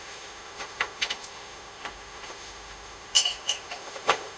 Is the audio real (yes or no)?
no